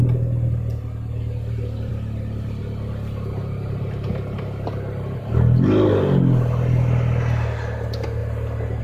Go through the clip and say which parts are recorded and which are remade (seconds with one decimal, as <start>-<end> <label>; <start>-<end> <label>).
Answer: 0.0-8.8 recorded